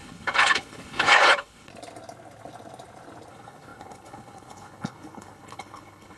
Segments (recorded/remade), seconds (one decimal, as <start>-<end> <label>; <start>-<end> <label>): 0.0-1.7 remade; 1.7-3.3 recorded; 3.3-6.2 remade